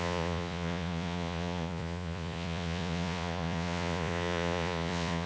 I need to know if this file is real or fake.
fake